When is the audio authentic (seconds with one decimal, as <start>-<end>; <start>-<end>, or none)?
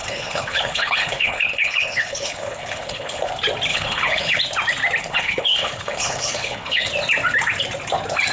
3.3-3.7; 4.4-5.0; 6.9-8.3